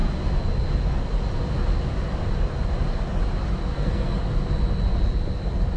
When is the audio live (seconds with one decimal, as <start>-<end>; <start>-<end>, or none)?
0.0-3.7; 4.2-5.8